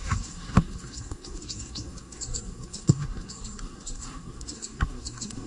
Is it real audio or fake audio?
fake